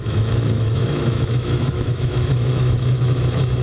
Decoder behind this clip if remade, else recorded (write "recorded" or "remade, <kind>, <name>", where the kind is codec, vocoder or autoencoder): remade, autoencoder, DAC-VAE